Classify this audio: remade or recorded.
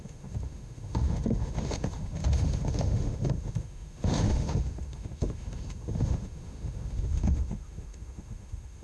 remade